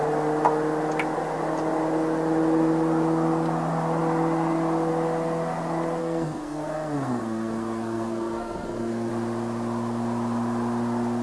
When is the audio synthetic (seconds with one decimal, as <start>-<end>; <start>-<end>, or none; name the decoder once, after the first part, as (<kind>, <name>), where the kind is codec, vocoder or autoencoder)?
6.0-9.1 (codec, SNAC)